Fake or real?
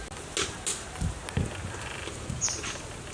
real